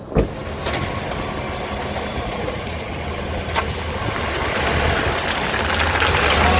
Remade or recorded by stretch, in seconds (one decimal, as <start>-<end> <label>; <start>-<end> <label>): 0.0-2.1 recorded; 2.1-3.0 remade; 3.0-6.6 recorded